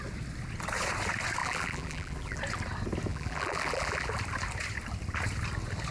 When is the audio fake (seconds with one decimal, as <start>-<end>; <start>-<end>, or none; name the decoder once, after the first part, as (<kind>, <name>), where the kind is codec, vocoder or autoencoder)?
1.4-2.4 (vocoder, BigVGAN v2); 3.1-4.1